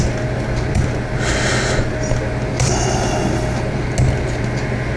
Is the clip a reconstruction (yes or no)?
no